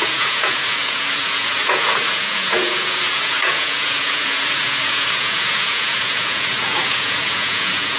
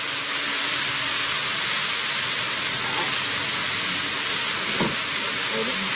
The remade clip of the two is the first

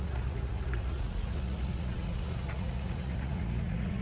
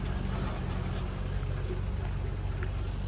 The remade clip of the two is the first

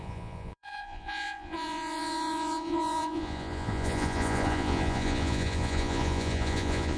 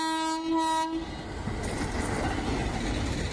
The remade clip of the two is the first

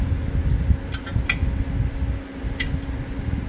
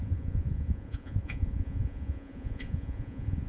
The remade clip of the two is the second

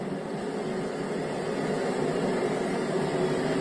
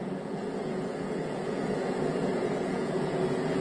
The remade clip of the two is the second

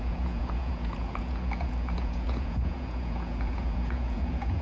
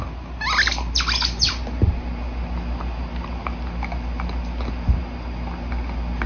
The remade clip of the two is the first